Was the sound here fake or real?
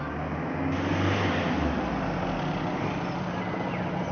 real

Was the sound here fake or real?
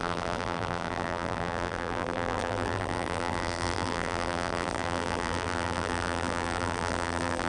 fake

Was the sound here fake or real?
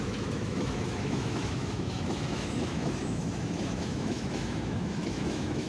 fake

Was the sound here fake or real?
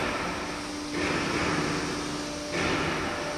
real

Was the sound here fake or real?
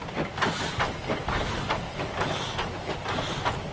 real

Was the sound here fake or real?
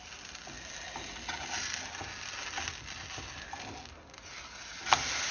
real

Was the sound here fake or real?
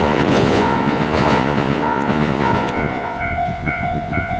fake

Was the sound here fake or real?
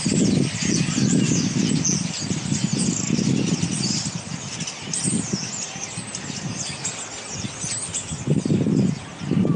real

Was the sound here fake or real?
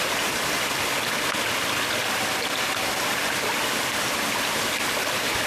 real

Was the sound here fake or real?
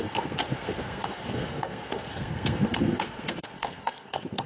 fake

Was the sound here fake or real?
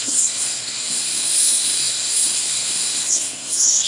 fake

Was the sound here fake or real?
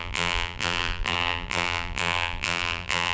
fake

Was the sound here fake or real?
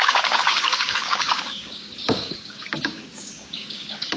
fake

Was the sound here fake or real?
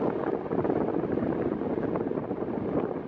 real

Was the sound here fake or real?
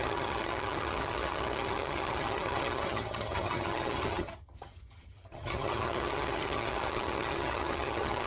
fake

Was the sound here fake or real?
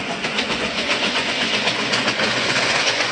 fake